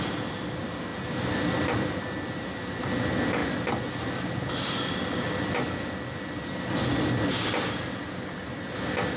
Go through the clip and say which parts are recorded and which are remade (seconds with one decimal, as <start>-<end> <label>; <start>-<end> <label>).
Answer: 0.0-9.2 recorded

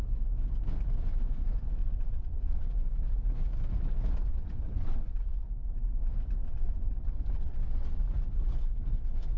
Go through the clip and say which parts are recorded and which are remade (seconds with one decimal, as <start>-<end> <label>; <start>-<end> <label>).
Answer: 0.0-1.8 recorded; 1.8-2.7 remade; 2.7-4.3 recorded; 4.3-5.4 remade; 5.4-6.4 recorded; 6.4-8.0 remade; 8.0-9.4 recorded

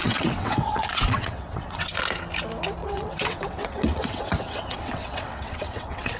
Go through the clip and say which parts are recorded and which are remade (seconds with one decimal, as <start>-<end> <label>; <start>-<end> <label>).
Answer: 0.0-2.0 remade; 2.0-2.8 recorded; 2.8-6.2 remade

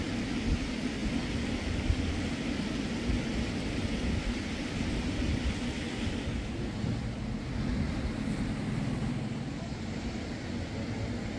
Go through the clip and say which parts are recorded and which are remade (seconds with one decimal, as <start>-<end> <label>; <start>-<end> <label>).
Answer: 0.0-11.4 recorded

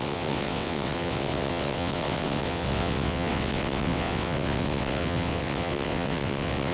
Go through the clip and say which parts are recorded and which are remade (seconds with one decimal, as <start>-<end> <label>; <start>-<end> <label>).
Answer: 0.0-6.7 remade

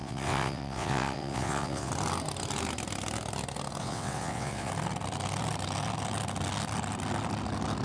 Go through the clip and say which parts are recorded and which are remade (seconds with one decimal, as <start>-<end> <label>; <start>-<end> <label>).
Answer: 0.0-1.9 remade; 1.9-3.8 recorded; 3.8-4.7 remade; 4.7-7.8 recorded